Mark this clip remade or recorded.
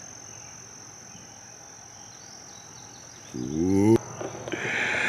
recorded